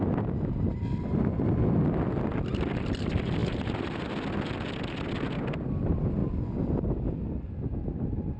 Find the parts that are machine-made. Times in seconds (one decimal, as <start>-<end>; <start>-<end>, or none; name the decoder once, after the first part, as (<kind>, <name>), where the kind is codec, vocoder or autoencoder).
none